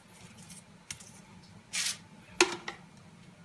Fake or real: real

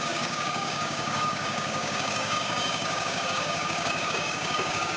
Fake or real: fake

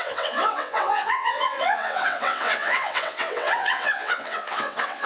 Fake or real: fake